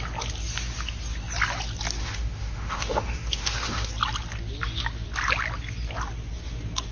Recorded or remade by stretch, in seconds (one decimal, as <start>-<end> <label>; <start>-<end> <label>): 0.0-2.0 recorded; 2.0-3.9 remade; 3.9-6.9 recorded